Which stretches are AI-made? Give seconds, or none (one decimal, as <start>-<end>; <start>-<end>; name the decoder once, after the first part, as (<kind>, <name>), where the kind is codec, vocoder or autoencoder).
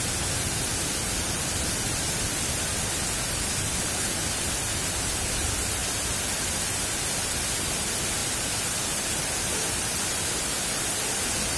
none